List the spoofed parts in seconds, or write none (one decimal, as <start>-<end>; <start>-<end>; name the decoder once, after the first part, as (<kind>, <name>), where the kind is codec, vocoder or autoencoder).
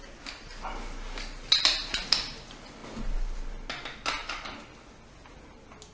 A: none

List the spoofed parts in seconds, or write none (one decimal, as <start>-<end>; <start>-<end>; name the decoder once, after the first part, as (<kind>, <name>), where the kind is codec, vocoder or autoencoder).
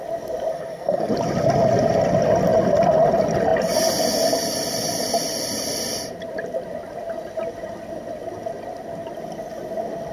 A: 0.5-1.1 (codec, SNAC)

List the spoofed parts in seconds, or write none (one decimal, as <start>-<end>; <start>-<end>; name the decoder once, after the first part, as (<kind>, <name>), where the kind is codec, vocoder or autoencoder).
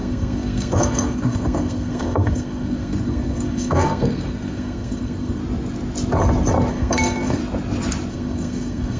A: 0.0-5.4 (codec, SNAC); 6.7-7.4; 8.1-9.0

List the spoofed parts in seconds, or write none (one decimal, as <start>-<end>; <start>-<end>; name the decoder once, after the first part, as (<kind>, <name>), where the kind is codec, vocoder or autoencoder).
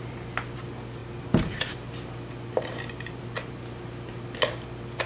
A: none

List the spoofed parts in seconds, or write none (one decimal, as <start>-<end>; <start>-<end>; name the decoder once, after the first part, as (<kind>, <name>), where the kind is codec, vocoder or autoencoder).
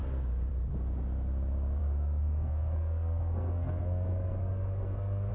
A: 1.8-5.3 (codec, SNAC)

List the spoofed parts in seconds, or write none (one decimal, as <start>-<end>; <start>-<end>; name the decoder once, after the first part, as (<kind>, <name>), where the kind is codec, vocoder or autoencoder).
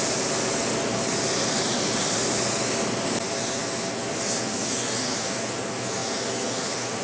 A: none